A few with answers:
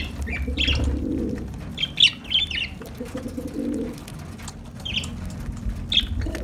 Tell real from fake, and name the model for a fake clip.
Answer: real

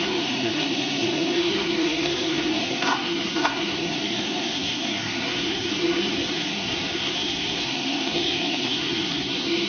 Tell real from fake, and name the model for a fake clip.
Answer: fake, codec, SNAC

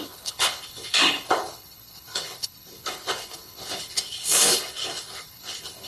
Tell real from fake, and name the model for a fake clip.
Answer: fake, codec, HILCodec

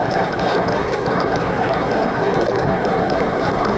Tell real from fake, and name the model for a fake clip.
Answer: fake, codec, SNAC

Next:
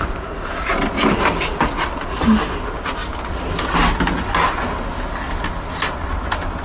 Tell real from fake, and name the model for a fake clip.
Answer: real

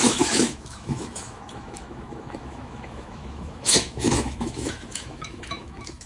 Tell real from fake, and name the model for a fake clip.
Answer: fake, autoencoder, DAC-VAE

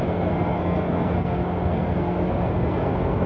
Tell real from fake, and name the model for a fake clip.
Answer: fake, codec, SNAC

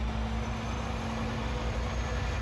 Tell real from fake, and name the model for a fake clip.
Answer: real